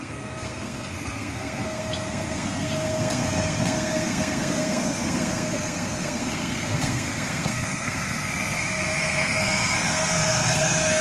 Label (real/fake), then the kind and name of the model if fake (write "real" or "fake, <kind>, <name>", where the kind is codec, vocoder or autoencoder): fake, codec, SNAC